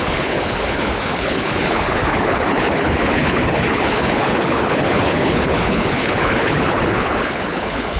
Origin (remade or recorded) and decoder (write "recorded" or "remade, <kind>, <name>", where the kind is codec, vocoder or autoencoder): remade, codec, HILCodec